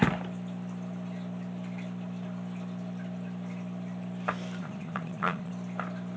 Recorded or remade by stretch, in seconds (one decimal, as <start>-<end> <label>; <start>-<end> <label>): 0.0-4.6 recorded; 4.6-5.5 remade; 5.5-6.2 recorded